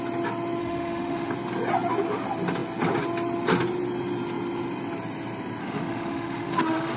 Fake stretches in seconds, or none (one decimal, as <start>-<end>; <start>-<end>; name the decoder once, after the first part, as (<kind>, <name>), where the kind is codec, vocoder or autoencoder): 0.6-1.3 (autoencoder, DAC-VAE); 5.6-7.0